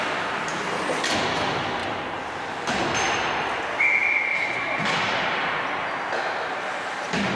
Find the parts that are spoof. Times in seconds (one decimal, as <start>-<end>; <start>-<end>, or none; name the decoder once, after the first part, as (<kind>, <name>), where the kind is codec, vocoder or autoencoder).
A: 0.5-1.1 (vocoder, BigVGAN v2); 1.8-2.5; 4.0-4.7